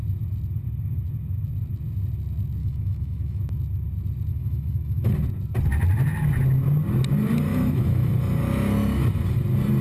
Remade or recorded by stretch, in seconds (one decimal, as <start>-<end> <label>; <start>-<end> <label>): 0.0-2.6 recorded; 2.6-3.4 remade; 3.4-4.3 recorded; 4.3-5.1 remade; 5.1-7.5 recorded; 7.5-8.1 remade; 8.1-9.8 recorded